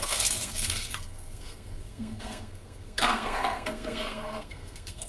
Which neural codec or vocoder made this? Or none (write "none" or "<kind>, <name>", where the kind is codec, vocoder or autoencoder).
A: codec, SNAC